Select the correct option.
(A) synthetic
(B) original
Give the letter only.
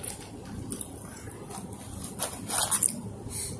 B